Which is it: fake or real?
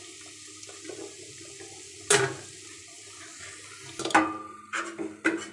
real